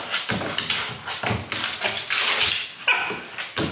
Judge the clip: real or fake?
real